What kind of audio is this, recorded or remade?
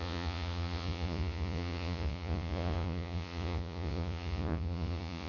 remade